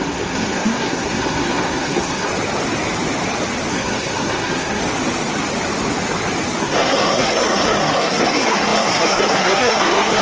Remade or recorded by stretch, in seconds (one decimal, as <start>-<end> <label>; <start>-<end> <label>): 0.0-2.3 remade; 2.3-3.7 recorded; 3.7-4.8 remade; 4.8-6.6 recorded; 6.6-10.2 remade